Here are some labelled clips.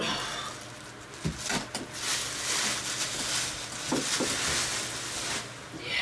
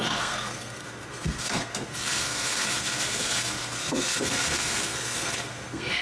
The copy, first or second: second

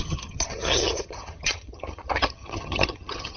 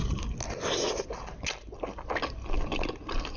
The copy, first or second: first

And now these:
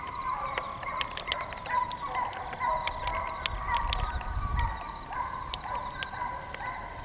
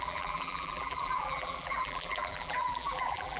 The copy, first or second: second